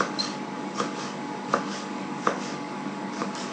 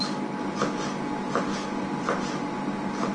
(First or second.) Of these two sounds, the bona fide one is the second